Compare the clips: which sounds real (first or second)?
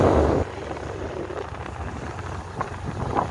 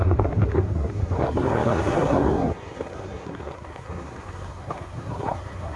first